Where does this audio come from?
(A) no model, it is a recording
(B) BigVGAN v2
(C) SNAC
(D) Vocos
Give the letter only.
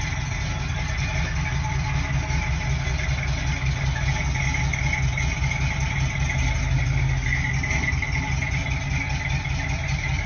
A